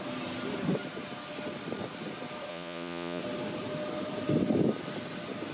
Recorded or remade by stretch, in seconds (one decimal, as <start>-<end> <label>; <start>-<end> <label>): 0.0-2.5 recorded; 2.5-3.2 remade; 3.2-5.5 recorded